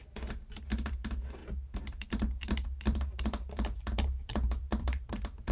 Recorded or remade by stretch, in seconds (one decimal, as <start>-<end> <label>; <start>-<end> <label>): 0.0-5.5 remade